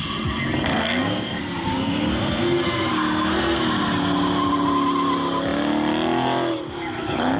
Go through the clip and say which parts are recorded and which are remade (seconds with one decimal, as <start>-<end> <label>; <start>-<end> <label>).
0.0-0.7 recorded; 0.7-3.6 remade; 3.6-7.4 recorded